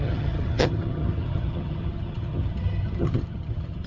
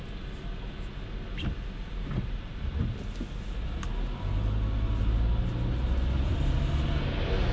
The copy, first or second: first